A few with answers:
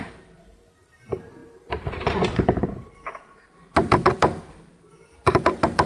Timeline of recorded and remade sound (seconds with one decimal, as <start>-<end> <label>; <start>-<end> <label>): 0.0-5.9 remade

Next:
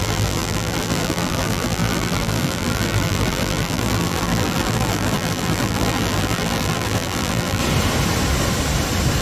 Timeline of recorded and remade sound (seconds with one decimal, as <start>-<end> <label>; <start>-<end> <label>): 0.0-7.6 remade; 7.6-9.2 recorded

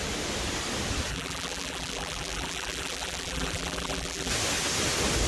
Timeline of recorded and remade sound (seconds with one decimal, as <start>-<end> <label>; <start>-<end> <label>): 0.0-1.1 recorded; 1.1-4.3 remade; 4.3-5.3 recorded

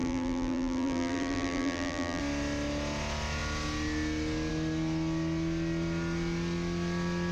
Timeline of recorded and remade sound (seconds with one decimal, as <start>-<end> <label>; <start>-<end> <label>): 0.0-2.2 remade; 2.2-7.3 recorded

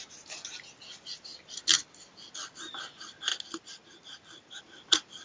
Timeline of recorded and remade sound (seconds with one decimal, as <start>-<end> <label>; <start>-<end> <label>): 0.0-1.3 recorded; 1.3-2.3 remade; 2.3-5.2 recorded